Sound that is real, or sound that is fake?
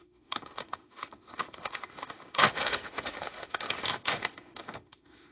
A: fake